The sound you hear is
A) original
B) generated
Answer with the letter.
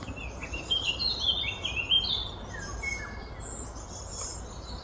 A